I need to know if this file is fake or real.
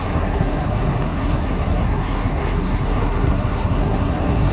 fake